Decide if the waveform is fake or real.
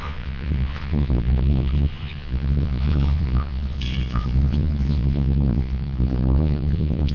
fake